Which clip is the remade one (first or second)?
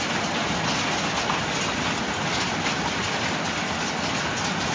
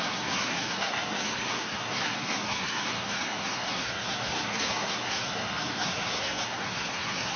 second